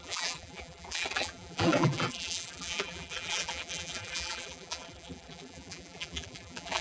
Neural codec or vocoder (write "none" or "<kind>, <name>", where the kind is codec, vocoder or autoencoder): vocoder, BigVGAN v2